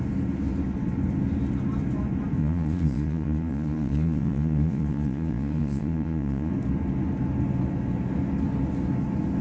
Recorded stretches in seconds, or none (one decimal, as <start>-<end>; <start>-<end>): 0.0-2.4; 6.5-9.4